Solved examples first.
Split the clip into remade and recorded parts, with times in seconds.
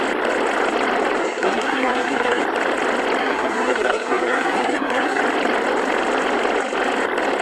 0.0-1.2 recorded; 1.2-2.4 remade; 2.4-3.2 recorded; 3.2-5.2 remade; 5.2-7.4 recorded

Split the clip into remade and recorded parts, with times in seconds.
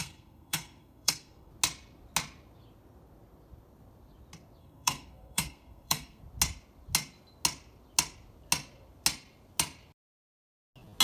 0.0-1.5 remade; 1.5-4.6 recorded; 4.6-6.2 remade; 6.2-11.0 recorded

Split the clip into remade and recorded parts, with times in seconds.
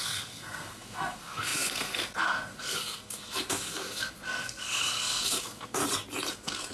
0.0-5.8 remade; 5.8-6.3 recorded; 6.3-6.7 remade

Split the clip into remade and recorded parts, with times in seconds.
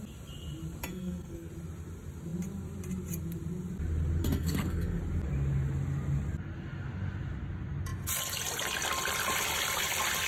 0.0-0.9 recorded; 0.9-1.5 remade; 1.5-4.2 recorded; 4.2-5.0 remade; 5.0-10.3 recorded